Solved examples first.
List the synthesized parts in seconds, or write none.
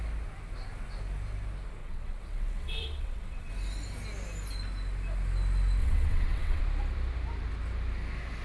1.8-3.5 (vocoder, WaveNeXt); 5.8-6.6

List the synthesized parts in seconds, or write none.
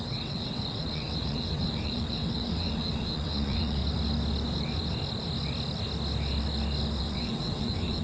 0.0-3.8 (vocoder, WaveNeXt); 7.0-8.0